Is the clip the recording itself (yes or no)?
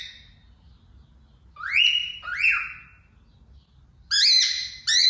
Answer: yes